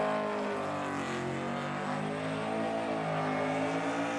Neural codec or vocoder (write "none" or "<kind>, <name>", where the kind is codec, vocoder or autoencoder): none